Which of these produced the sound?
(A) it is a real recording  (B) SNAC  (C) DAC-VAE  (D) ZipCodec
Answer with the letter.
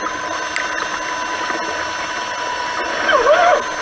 A